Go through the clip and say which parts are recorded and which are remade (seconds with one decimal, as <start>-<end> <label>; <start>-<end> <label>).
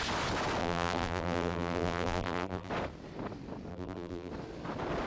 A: 0.0-0.6 recorded; 0.6-2.7 remade; 2.7-3.7 recorded; 3.7-4.3 remade; 4.3-5.1 recorded